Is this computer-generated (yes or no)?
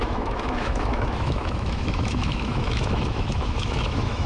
yes